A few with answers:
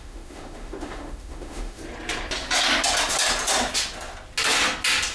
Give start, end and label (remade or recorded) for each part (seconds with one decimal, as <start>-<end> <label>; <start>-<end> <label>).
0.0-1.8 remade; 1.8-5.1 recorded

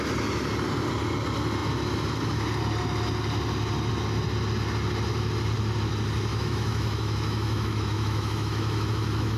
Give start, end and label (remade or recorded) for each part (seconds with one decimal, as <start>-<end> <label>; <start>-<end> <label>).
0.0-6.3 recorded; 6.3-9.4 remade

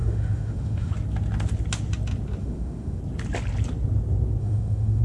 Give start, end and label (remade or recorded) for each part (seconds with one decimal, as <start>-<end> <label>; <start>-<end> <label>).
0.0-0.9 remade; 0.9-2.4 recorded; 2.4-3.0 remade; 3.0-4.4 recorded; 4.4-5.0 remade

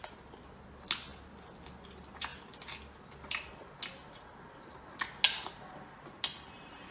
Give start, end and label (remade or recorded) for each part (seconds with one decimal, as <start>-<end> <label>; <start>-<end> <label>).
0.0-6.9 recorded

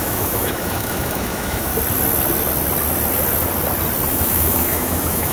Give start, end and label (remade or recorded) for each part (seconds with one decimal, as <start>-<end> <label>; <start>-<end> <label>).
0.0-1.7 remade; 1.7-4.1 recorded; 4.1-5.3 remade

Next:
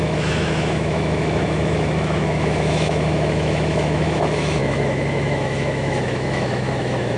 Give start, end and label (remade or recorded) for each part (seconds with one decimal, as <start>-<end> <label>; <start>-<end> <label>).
0.0-7.2 remade

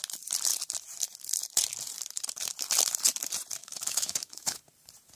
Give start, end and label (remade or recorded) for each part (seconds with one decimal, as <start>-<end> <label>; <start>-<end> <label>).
0.0-3.6 recorded; 3.6-4.6 remade; 4.6-5.2 recorded

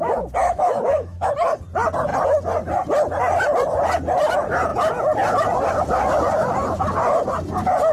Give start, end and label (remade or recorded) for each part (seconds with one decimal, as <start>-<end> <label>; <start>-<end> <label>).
0.0-0.4 recorded; 0.4-1.3 remade; 1.3-7.9 recorded